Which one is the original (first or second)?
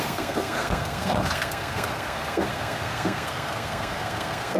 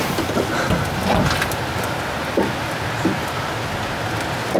second